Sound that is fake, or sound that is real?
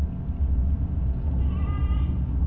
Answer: real